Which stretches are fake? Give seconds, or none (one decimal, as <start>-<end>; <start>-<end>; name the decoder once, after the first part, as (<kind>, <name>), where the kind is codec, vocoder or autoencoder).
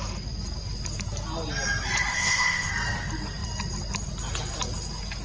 2.1-2.7 (codec, ZipCodec)